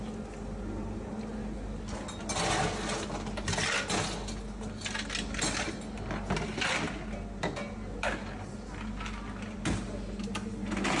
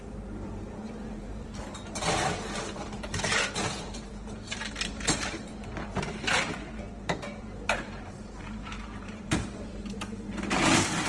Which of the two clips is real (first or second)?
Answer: first